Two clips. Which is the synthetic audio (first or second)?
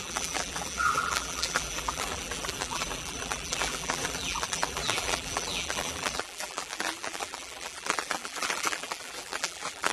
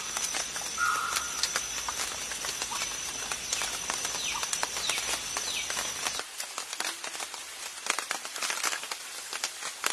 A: first